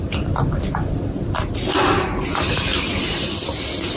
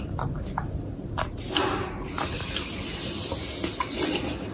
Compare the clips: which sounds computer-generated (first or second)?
first